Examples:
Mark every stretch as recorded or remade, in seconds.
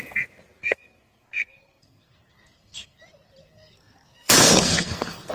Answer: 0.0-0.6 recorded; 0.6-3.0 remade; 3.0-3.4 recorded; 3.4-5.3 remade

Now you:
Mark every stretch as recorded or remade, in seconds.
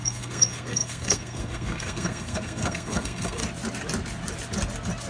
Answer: 0.0-3.4 remade; 3.4-5.1 recorded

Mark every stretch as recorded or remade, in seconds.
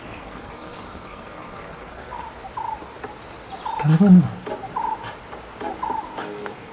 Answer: 0.0-2.2 remade; 2.2-6.2 recorded; 6.2-6.7 remade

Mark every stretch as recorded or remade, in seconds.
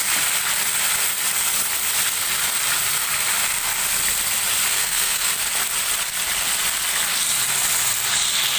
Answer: 0.0-4.7 recorded; 4.7-5.3 remade; 5.3-8.6 recorded